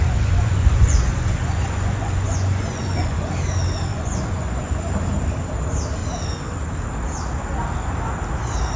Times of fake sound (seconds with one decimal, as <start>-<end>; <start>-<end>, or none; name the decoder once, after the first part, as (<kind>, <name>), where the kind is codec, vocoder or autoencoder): 0.0-3.2 (vocoder, Vocos); 3.9-4.7